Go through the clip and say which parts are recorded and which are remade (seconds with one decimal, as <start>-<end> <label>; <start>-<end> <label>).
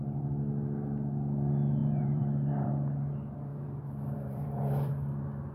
0.0-1.8 recorded; 1.8-2.7 remade; 2.7-3.5 recorded; 3.5-4.9 remade; 4.9-5.5 recorded